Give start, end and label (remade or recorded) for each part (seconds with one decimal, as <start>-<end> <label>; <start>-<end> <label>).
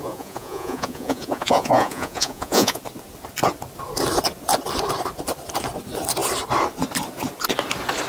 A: 0.0-2.8 remade; 2.8-8.1 recorded